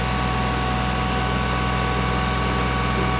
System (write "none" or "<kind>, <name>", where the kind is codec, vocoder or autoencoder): none